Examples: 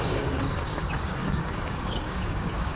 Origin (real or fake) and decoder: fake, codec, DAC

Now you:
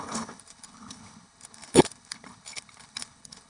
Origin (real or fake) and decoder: fake, codec, HILCodec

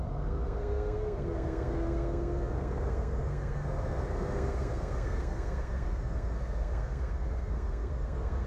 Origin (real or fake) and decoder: fake, codec, SNAC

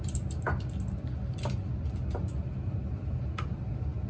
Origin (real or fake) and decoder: real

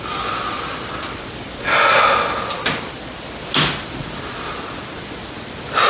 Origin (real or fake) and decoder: real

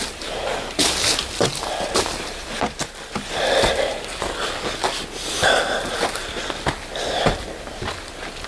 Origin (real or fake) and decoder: real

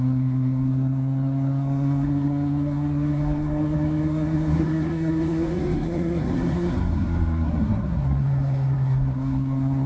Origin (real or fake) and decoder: fake, codec, SNAC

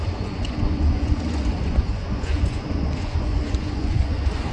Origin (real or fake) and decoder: fake, vocoder, Vocos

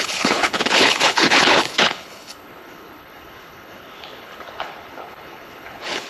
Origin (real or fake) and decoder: fake, codec, HILCodec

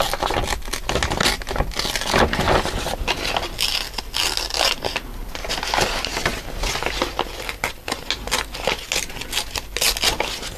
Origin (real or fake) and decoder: real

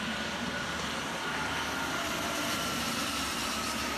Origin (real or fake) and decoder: real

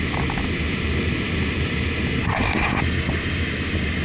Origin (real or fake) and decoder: real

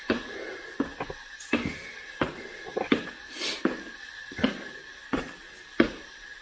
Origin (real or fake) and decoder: real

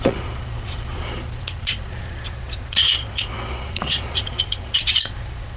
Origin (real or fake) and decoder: fake, vocoder, Vocos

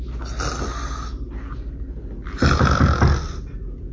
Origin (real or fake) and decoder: real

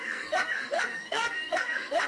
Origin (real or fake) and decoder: fake, codec, SNAC